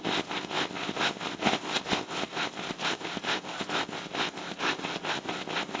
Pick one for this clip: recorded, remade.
remade